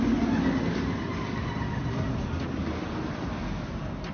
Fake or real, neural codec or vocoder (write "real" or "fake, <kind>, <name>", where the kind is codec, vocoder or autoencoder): real